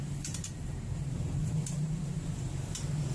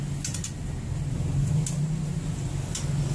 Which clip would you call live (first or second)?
second